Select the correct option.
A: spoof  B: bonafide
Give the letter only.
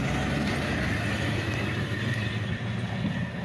B